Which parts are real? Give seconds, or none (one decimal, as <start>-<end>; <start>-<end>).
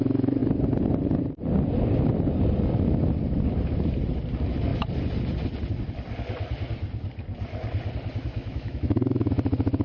0.0-8.3; 9.3-9.8